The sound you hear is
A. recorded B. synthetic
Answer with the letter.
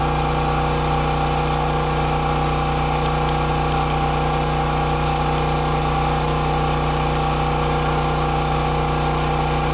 A